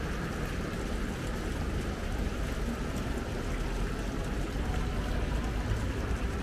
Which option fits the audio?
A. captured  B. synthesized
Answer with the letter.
A